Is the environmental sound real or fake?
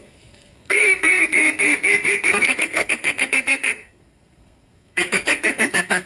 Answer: fake